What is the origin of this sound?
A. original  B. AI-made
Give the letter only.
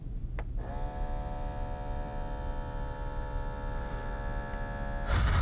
A